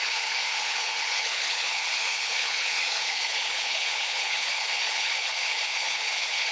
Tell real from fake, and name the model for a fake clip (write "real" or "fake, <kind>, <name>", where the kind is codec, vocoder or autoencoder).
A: fake, codec, HILCodec